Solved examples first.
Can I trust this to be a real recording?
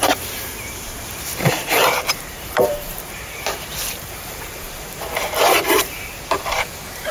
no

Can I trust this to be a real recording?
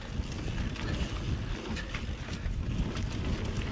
yes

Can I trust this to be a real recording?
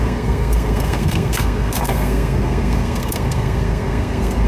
no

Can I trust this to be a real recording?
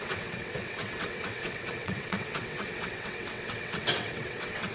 no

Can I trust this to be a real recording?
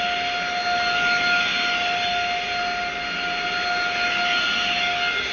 yes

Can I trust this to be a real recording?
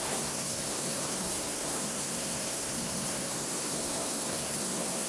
no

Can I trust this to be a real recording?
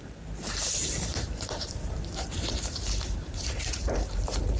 no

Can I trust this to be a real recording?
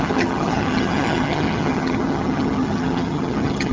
no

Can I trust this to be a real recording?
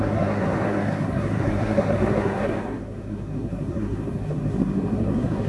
no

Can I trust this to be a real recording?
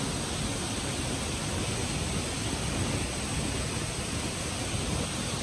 yes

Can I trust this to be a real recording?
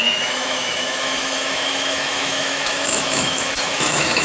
no